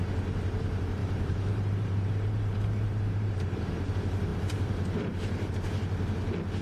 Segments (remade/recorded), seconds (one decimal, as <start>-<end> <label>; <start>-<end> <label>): 0.0-1.0 recorded; 1.0-3.9 remade; 3.9-4.3 recorded; 4.3-5.5 remade; 5.5-6.6 recorded